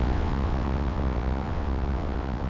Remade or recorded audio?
remade